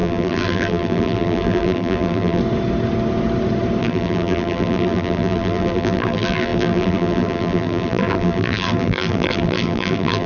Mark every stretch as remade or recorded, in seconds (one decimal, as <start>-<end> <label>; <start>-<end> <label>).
0.0-2.4 remade; 2.4-3.8 recorded; 3.8-10.3 remade